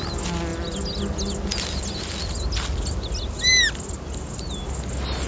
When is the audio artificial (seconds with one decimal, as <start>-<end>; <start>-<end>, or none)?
none